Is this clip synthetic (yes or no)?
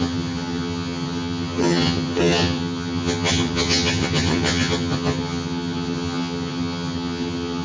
yes